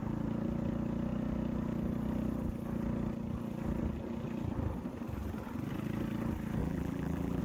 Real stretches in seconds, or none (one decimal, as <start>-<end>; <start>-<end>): 0.0-6.6